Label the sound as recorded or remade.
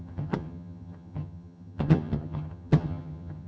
remade